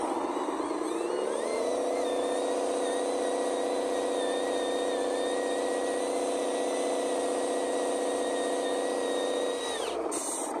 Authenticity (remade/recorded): recorded